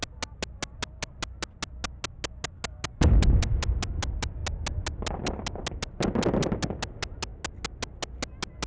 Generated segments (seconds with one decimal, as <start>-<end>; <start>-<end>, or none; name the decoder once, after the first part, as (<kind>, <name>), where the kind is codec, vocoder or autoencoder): none